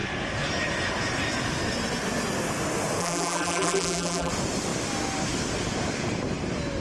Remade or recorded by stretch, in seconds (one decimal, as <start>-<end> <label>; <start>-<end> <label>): 0.0-3.0 recorded; 3.0-4.3 remade; 4.3-6.8 recorded